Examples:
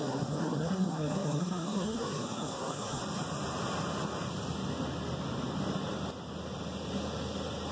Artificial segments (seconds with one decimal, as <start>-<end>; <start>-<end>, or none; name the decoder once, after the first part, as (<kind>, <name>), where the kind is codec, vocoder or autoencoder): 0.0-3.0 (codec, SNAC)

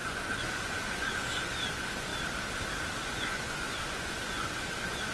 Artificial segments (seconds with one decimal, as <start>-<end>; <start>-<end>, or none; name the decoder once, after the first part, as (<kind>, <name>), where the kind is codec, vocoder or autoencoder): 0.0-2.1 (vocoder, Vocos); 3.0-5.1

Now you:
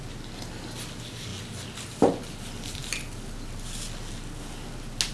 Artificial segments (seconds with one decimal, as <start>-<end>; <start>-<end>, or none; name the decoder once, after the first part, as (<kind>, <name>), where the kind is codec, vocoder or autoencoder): none

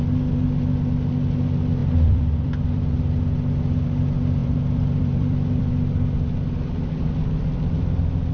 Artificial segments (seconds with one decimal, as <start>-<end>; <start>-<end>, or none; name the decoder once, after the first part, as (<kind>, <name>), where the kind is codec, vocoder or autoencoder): 1.8-2.8 (vocoder, BigVGAN v2); 4.4-5.7

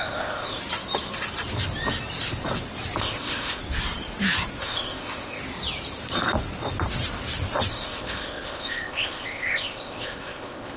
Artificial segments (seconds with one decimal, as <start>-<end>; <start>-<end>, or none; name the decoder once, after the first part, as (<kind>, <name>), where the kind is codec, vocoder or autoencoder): 0.0-0.6 (codec, ZipCodec); 3.0-3.6; 4.6-5.4; 7.7-10.8

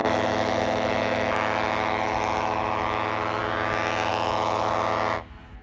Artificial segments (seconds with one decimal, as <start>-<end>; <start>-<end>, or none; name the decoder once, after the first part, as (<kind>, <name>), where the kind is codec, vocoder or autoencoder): 0.0-3.4 (autoencoder, DAC-VAE); 4.1-4.7